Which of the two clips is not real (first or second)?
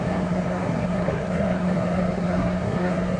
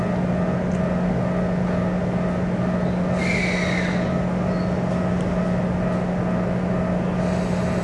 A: first